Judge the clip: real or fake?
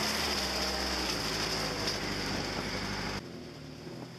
real